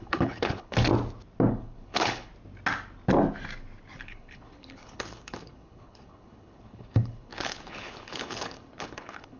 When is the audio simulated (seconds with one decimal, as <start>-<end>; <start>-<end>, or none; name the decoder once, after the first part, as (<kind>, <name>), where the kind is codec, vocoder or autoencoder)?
0.0-0.9 (codec, HILCodec); 1.5-2.3; 4.0-9.4